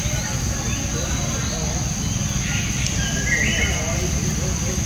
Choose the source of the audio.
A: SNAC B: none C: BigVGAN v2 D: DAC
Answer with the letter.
B